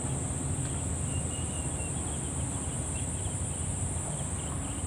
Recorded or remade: recorded